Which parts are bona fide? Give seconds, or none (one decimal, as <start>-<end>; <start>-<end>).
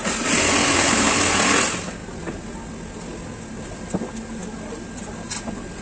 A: 0.0-0.6; 1.2-5.8